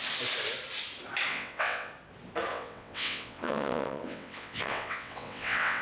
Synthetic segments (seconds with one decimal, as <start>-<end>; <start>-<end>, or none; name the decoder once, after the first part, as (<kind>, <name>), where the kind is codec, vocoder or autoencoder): 1.3-1.9 (vocoder, WaveNeXt); 2.5-5.8

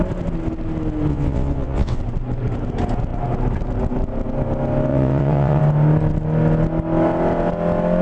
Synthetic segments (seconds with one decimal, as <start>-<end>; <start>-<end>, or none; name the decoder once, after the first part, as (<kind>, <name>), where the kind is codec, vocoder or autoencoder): 1.1-2.0 (vocoder, WaveNeXt); 4.9-5.6